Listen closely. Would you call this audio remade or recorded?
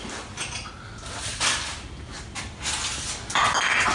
recorded